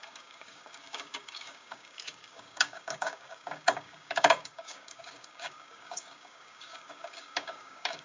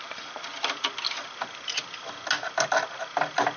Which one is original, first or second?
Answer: second